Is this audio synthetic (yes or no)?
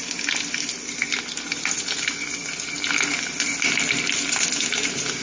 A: no